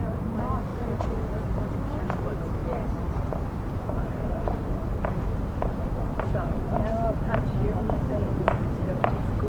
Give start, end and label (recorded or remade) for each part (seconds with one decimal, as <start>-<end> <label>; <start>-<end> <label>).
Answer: 0.0-9.5 remade